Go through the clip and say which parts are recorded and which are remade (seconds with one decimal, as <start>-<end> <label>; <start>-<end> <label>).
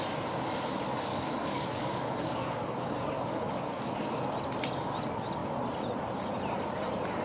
0.0-1.1 recorded; 1.1-4.2 remade; 4.2-7.2 recorded